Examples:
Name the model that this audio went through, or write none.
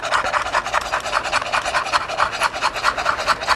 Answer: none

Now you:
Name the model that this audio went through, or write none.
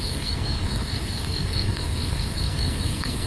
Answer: codec, SNAC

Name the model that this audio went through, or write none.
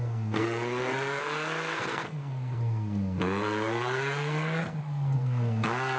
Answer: codec, SNAC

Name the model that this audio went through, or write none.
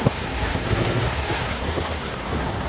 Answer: codec, SNAC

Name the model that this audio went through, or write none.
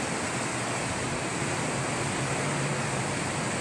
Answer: none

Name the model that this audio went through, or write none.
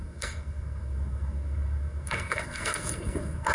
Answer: codec, SNAC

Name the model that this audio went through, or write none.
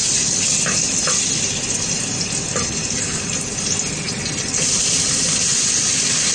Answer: none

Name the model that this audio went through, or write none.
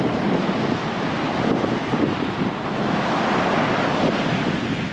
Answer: none